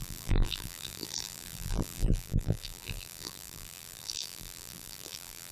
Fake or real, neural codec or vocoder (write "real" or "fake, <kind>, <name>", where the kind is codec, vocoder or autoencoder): fake, vocoder, BigVGAN v2